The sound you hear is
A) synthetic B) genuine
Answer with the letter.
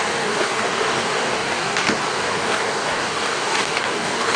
A